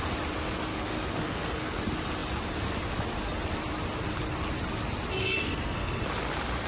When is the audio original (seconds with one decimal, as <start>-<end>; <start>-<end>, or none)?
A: 0.0-0.7; 1.8-5.2; 6.0-6.7